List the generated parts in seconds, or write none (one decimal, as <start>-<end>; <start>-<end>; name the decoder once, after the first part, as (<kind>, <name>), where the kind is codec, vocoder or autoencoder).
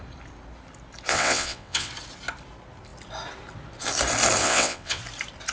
1.1-1.9 (vocoder, WaveNeXt); 4.4-5.0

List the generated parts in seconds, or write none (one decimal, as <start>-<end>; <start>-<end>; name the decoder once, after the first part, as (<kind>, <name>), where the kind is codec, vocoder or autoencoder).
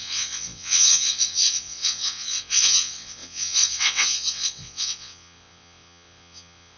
0.0-6.8 (vocoder, WaveNeXt)